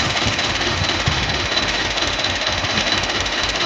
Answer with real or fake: fake